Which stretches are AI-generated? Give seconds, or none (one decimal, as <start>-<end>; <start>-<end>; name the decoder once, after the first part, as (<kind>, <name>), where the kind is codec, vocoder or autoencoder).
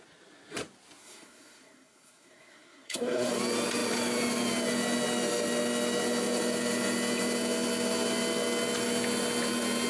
1.0-3.3 (codec, SNAC)